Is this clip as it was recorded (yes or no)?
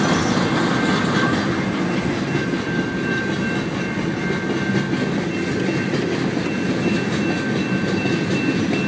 yes